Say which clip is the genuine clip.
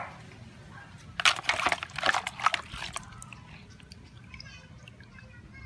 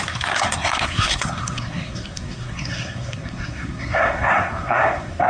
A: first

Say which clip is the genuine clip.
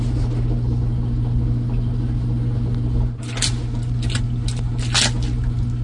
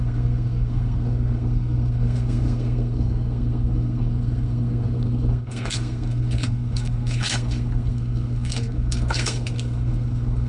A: first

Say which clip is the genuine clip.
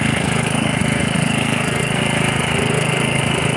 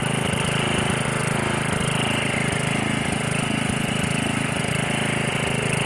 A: second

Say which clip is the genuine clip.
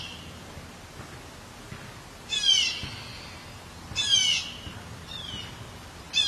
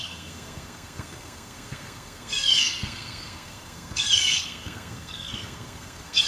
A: first